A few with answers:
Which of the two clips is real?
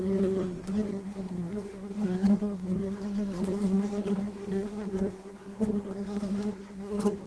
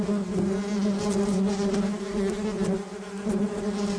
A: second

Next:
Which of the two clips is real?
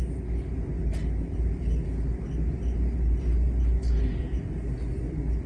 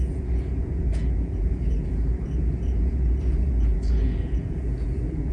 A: first